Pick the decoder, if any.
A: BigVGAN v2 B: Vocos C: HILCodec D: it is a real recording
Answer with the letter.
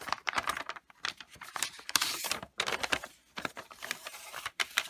A